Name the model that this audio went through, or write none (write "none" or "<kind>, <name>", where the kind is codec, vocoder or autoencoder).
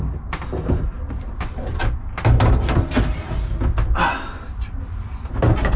none